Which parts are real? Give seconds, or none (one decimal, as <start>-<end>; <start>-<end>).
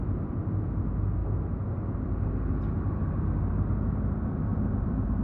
0.0-4.5